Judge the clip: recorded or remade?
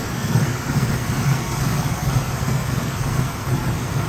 remade